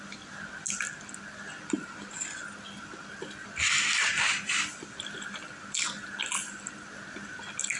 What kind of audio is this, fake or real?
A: real